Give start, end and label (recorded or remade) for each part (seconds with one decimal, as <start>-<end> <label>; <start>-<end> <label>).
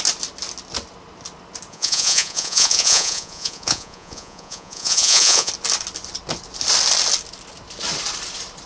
0.0-1.7 recorded; 1.7-5.5 remade; 5.5-8.7 recorded